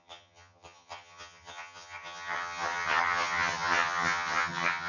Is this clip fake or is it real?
fake